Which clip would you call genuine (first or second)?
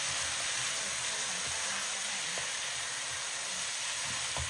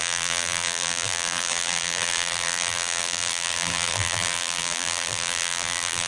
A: first